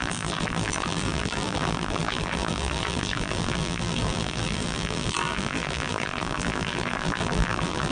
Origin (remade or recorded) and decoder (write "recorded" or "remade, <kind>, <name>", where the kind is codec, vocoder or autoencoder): remade, vocoder, BigVGAN v2